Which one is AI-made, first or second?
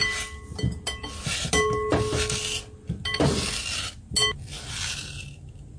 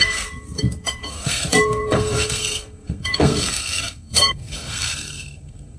second